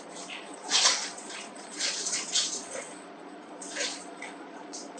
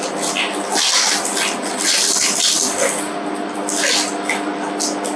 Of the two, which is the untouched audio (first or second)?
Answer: second